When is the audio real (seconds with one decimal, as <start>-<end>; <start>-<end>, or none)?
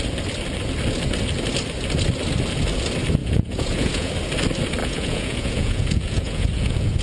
0.0-3.2; 4.1-4.8